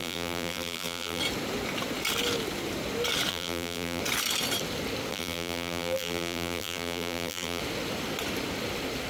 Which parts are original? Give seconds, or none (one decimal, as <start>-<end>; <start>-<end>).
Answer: 1.2-3.3; 4.0-5.1; 7.6-9.1